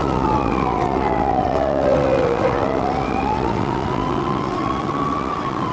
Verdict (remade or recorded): remade